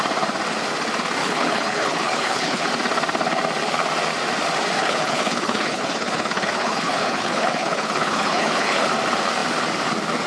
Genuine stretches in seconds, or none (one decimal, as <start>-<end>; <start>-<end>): 0.0-1.2; 2.7-4.8; 8.9-10.3